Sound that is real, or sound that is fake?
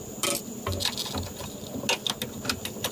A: real